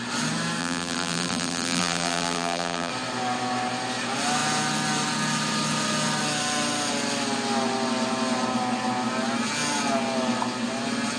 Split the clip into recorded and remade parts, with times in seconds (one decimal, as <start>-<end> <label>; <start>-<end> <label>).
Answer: 0.0-0.6 recorded; 0.6-2.9 remade; 2.9-11.2 recorded